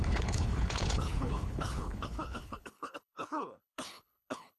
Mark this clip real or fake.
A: fake